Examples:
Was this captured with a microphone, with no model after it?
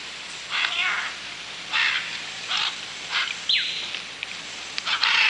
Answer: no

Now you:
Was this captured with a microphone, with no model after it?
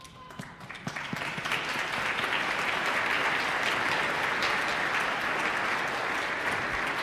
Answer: yes